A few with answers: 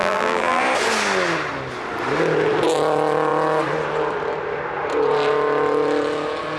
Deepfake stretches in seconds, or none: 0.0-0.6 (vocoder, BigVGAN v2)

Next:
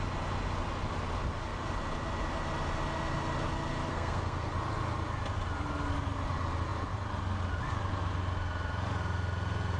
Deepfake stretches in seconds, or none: 3.9-4.5 (codec, SNAC)

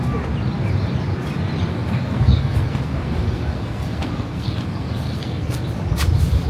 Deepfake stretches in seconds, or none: 1.7-5.6 (codec, SNAC)

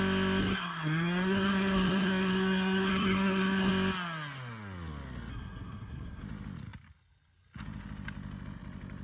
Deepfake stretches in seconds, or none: 0.4-3.7 (codec, SNAC); 5.3-6.2

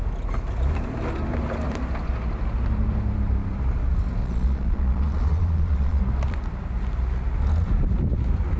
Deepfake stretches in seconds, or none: 4.2-6.0 (vocoder, Vocos)

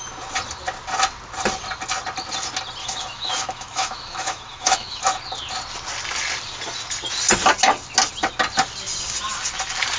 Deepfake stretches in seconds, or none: 2.8-5.0 (autoencoder, DAC-VAE)

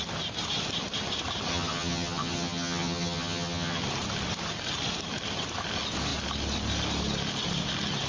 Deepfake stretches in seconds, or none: 1.5-3.8 (vocoder, HiFi-GAN)